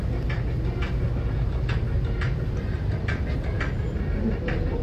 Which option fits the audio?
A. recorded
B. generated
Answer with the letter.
A